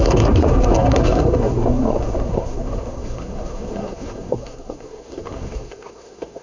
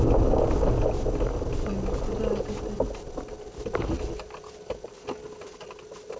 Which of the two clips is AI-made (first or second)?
first